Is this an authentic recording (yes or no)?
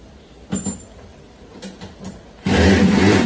yes